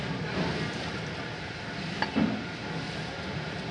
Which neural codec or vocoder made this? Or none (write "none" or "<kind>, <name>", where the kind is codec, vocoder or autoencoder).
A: none